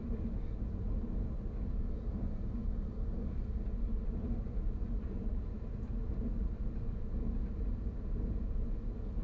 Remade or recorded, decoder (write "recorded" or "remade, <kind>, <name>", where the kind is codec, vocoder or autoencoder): recorded